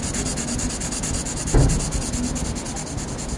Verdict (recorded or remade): recorded